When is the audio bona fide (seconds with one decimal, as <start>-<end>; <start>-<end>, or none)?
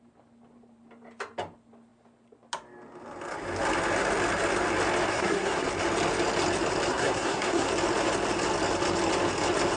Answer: 0.0-5.1; 5.7-6.9; 7.7-9.8